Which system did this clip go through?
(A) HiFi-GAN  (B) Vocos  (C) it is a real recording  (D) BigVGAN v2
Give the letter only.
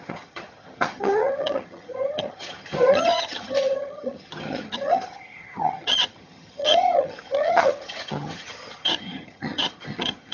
A